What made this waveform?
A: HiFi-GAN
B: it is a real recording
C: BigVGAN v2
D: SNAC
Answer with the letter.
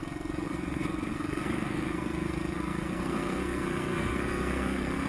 D